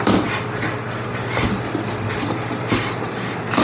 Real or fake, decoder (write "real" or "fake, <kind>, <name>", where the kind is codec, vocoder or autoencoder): real